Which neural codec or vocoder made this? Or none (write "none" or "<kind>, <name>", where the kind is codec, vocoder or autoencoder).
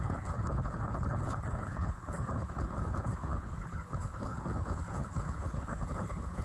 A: codec, HILCodec